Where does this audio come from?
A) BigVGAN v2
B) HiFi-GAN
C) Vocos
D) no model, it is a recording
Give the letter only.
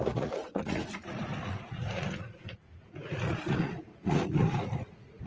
C